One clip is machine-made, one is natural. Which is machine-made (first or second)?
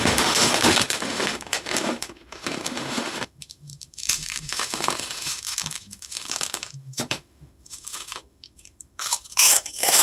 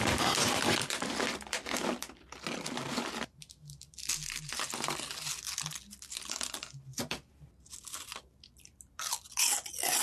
first